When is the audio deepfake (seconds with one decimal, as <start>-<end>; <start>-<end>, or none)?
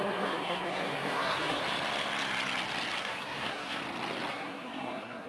0.0-1.6; 3.0-3.8; 4.3-5.3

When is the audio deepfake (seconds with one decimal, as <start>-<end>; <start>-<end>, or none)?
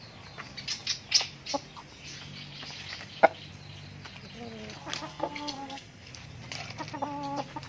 5.1-6.1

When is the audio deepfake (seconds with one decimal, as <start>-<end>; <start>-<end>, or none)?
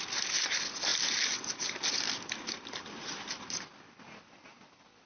none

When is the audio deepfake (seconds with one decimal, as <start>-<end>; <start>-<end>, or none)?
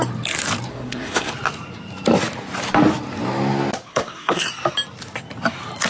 0.7-1.3; 3.9-4.5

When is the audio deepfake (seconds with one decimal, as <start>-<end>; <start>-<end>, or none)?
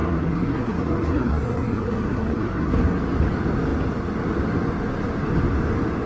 0.0-3.0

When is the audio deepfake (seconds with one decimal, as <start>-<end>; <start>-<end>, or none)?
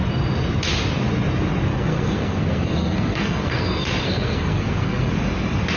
1.7-5.1